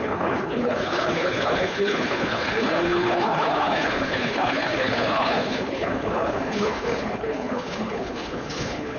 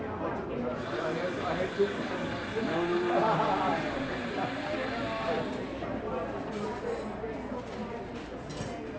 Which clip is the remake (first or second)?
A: first